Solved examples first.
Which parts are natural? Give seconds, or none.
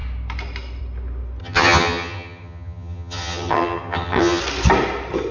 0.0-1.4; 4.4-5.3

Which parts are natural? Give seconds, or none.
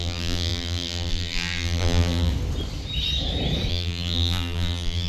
2.3-3.7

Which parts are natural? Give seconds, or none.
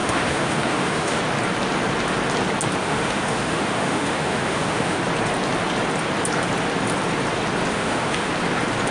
1.2-2.8; 5.0-7.7; 8.3-8.9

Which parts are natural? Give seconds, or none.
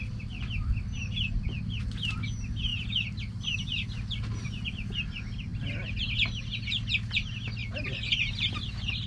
0.0-9.1